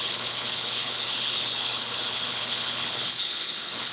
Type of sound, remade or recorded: remade